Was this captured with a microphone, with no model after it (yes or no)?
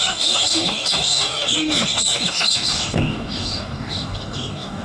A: no